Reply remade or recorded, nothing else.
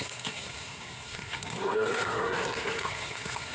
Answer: remade